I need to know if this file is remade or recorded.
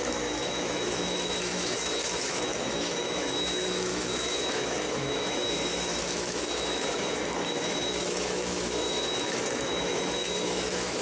remade